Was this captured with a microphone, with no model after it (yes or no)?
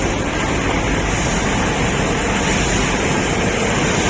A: yes